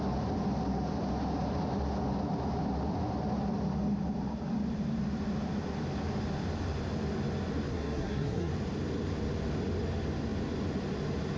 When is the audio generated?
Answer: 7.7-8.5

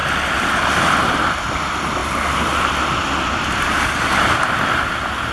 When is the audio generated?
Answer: 2.0-5.3

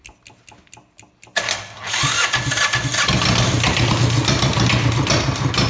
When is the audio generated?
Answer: none